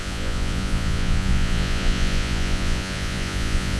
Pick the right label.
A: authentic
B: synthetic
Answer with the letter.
B